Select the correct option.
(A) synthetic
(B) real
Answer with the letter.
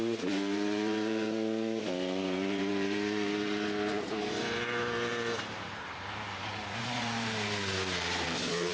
A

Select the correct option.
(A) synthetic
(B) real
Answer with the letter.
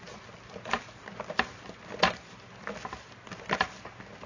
B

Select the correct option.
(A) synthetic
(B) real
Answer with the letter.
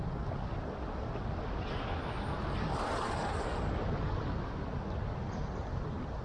B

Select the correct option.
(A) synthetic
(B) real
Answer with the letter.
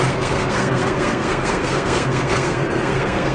A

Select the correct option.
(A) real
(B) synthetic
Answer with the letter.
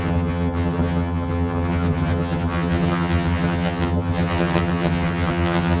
B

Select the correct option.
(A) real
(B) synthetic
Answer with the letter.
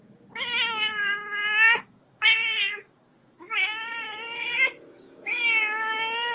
B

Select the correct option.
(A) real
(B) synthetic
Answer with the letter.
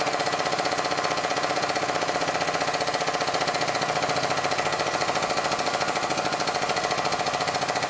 A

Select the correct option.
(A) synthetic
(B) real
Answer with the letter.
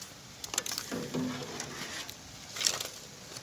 B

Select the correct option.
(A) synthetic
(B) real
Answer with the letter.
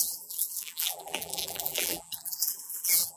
A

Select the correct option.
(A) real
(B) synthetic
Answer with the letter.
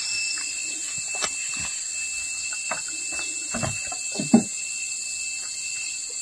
A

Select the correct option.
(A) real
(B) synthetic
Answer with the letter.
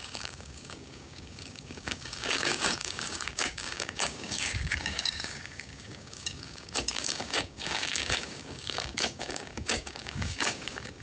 B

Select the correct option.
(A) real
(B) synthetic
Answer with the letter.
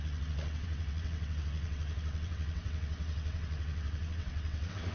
B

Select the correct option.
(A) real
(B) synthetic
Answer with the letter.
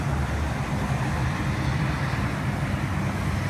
A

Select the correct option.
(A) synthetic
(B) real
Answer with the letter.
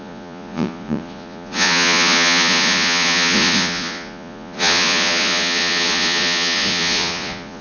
A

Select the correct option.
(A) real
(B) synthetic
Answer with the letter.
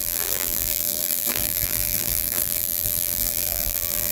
B